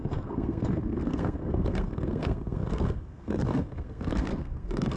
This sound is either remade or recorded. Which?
remade